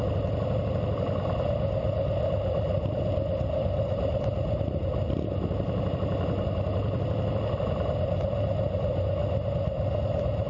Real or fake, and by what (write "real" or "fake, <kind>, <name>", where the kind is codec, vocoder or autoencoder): real